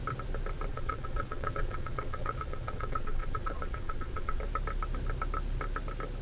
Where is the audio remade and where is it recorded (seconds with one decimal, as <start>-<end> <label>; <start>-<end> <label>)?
0.0-0.7 recorded; 0.7-4.4 remade; 4.4-6.2 recorded